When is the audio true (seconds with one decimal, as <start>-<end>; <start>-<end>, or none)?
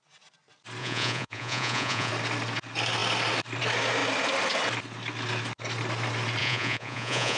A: 0.0-0.8; 2.1-6.4